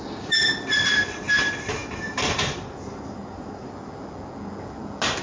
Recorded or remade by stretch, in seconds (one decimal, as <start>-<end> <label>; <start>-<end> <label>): 0.0-1.8 recorded; 1.8-3.7 remade; 3.7-5.2 recorded